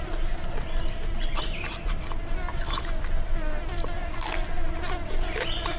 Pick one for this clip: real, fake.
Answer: real